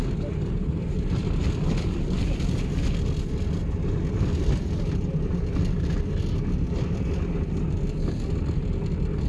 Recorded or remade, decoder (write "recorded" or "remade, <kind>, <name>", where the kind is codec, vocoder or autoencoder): recorded